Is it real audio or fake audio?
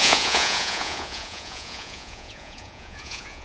fake